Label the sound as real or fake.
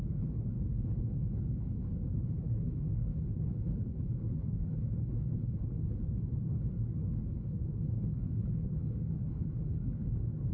fake